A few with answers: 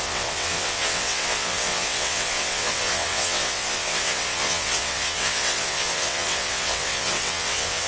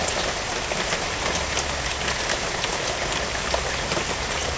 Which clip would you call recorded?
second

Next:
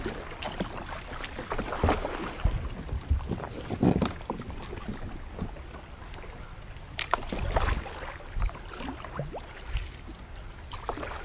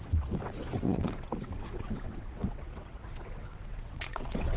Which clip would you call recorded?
first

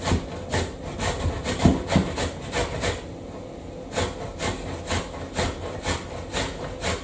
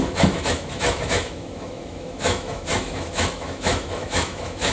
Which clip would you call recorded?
first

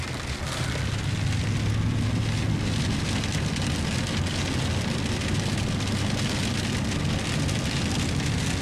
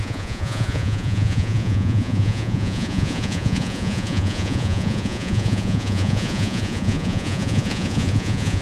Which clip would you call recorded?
first